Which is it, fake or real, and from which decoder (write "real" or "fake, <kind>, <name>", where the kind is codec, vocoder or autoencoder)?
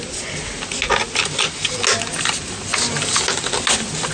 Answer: real